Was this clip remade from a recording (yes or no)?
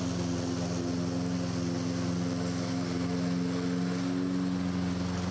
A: no